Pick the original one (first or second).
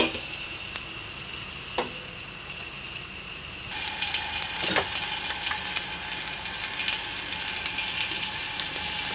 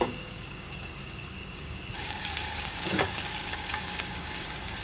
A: first